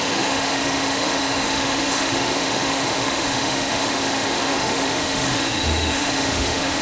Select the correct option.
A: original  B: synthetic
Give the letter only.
B